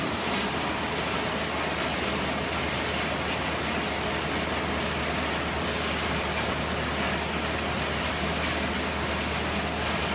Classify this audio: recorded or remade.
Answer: recorded